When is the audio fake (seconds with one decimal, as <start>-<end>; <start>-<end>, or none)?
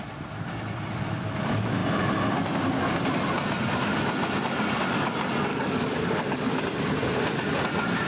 5.5-6.6